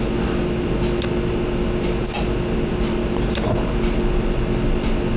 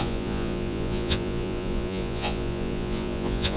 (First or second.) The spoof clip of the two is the second